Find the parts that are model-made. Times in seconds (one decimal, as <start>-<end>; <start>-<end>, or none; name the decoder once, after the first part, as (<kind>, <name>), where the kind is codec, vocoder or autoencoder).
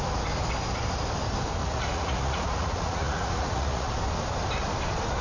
1.6-3.9 (vocoder, Vocos)